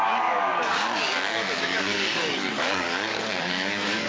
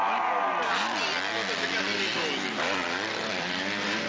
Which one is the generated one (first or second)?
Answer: first